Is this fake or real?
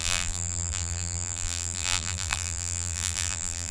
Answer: fake